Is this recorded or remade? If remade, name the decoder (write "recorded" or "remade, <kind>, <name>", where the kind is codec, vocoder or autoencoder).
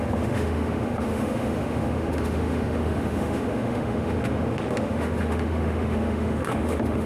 remade, autoencoder, DAC-VAE